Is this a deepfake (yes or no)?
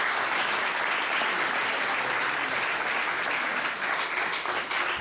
no